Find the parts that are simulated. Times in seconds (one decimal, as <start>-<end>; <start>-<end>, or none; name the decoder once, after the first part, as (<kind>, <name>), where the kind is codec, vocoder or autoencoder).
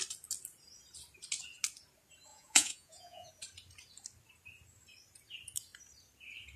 2.3-3.3 (vocoder, Vocos)